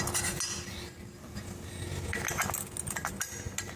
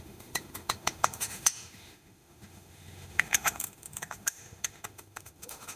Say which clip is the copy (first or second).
second